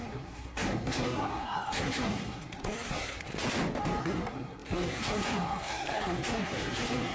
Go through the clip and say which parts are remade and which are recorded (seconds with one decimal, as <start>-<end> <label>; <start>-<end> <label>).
0.0-3.3 remade; 3.3-4.0 recorded; 4.0-7.1 remade

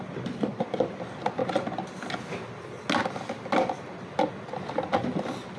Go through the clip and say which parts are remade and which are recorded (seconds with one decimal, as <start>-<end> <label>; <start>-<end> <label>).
0.0-5.6 recorded